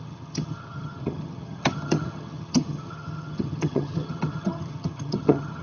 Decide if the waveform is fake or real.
fake